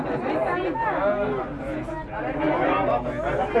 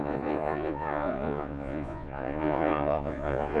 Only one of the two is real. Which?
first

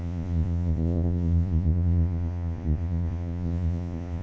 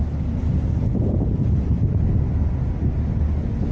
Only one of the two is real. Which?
second